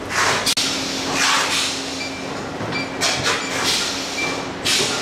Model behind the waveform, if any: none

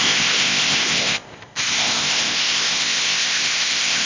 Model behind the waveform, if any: codec, ZipCodec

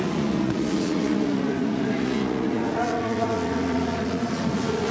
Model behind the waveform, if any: vocoder, Vocos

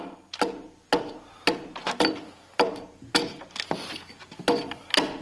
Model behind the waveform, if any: none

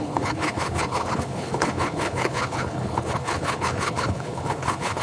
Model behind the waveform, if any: codec, HILCodec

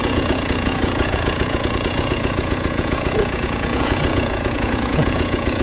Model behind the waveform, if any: vocoder, Vocos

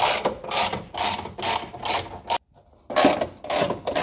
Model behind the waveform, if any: none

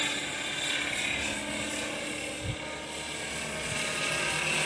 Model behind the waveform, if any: none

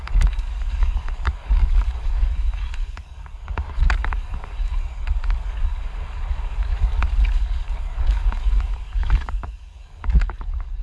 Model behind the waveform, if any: codec, DAC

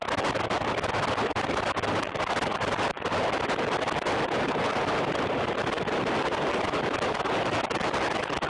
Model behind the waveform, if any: none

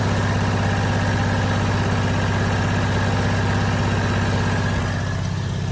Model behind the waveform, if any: none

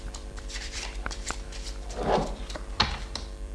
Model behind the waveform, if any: vocoder, BigVGAN v2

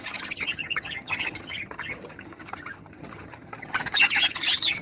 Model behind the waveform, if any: vocoder, HiFi-GAN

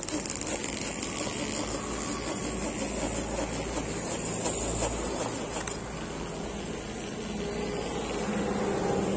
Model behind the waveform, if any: none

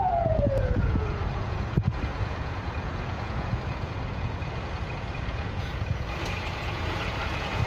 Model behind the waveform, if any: vocoder, Vocos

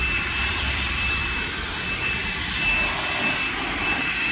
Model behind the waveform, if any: vocoder, BigVGAN v2